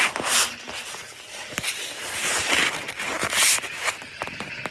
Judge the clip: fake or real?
fake